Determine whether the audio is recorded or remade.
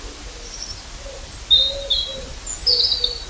recorded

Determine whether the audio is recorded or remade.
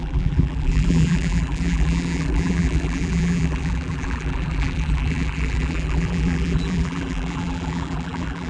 remade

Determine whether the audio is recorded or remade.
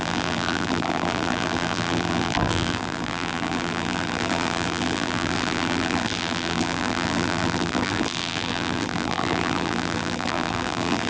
remade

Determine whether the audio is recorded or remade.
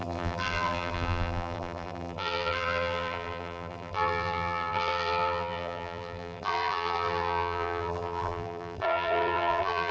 remade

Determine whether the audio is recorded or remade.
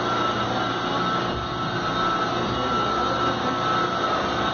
recorded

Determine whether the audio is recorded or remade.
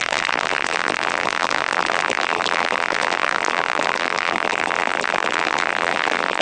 remade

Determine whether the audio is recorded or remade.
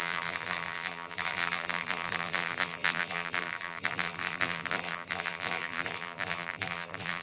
remade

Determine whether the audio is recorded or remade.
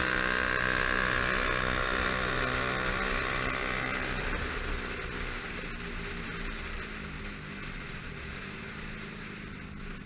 recorded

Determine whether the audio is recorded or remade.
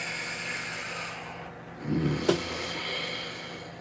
recorded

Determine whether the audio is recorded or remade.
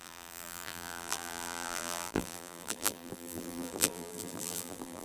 remade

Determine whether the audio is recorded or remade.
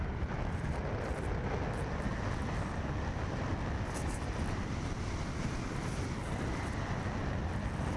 recorded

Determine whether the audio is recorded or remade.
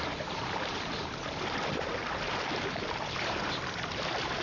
remade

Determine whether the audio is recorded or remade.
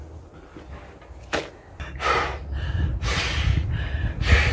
recorded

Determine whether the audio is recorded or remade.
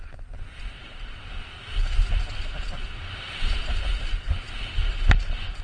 recorded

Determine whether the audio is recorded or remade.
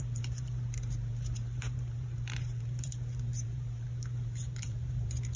remade